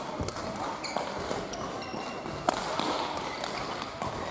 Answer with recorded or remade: recorded